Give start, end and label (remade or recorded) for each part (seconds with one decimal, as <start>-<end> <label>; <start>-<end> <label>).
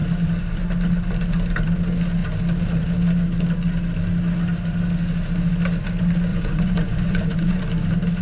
0.0-6.3 recorded; 6.3-7.6 remade; 7.6-8.2 recorded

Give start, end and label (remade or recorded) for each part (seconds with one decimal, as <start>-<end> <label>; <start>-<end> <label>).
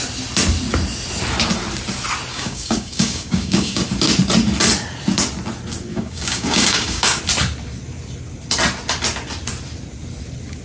0.0-2.3 recorded; 2.3-3.8 remade; 3.8-5.9 recorded; 5.9-7.2 remade; 7.2-10.6 recorded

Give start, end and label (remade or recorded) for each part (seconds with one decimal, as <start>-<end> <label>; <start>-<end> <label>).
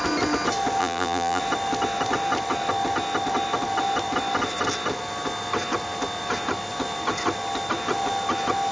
0.0-0.8 recorded; 0.8-1.4 remade; 1.4-8.7 recorded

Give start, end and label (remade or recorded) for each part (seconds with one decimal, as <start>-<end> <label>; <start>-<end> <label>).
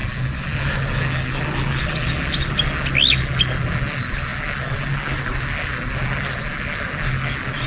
0.0-7.7 recorded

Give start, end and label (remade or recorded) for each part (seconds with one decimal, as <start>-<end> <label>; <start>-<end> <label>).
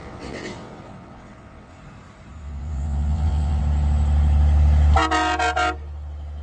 0.0-1.8 remade; 1.8-2.4 recorded; 2.4-3.6 remade; 3.6-6.4 recorded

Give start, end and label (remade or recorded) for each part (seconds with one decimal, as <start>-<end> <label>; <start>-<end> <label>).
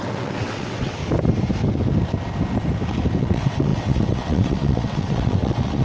0.0-1.0 remade; 1.0-3.2 recorded; 3.2-5.8 remade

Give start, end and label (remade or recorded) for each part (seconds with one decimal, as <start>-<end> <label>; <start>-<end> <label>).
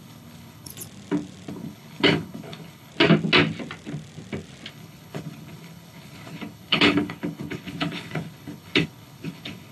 0.0-0.7 remade; 0.7-1.5 recorded; 1.5-2.9 remade; 2.9-4.7 recorded; 4.7-9.7 remade